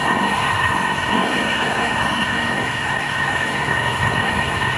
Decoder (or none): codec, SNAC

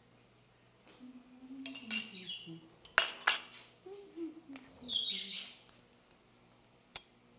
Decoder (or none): none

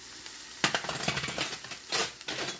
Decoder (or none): none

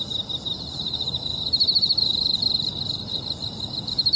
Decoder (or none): none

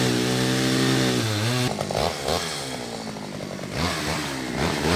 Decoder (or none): none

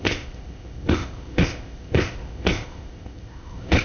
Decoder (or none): codec, ZipCodec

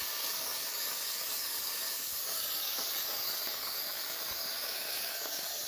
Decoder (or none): codec, DAC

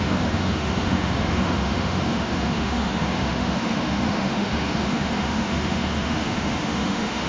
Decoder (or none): autoencoder, DAC-VAE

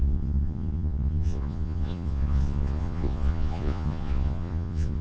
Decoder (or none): vocoder, Vocos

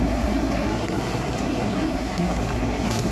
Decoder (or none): codec, SNAC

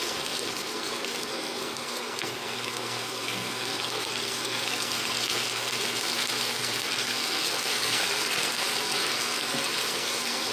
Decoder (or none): codec, SNAC